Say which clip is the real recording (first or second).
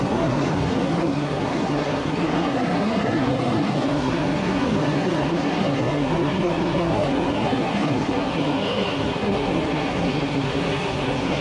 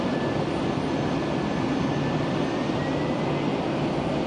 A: second